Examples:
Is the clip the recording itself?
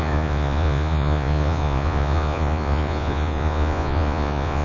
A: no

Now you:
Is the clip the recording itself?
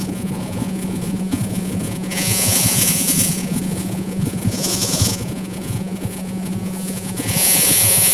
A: no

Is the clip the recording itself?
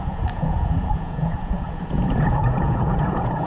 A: no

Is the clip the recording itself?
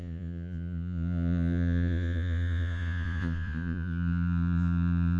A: no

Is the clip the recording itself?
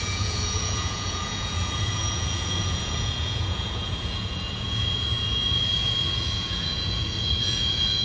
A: no